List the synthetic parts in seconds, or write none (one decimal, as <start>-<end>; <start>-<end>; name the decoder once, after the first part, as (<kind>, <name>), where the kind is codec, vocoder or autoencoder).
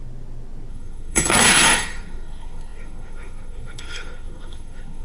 0.7-5.0 (codec, SNAC)